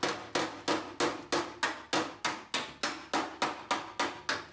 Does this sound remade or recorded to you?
recorded